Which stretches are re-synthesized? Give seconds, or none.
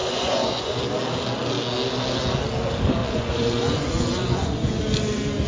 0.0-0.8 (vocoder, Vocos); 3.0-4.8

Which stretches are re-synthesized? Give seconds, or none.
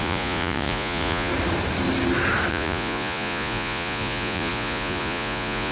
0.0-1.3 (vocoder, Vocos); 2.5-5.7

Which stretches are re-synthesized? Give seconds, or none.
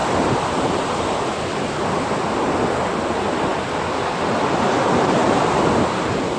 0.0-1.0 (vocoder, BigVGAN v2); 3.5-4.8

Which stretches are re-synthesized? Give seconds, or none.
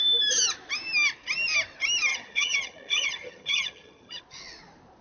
2.1-4.2 (vocoder, HiFi-GAN)